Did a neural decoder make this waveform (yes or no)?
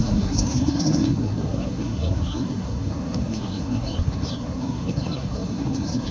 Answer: yes